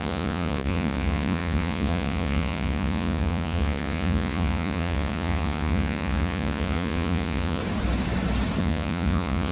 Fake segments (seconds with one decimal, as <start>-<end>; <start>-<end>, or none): 0.0-7.6; 8.6-9.5